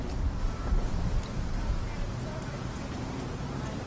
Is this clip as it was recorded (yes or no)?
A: no